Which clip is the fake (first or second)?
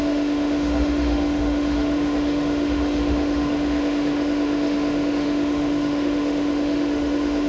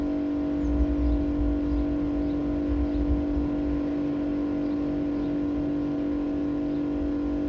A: first